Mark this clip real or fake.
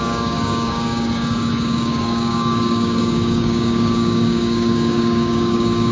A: fake